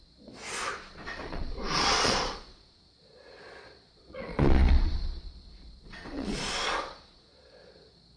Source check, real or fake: fake